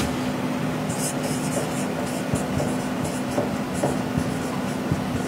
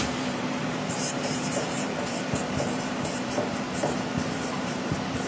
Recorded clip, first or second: first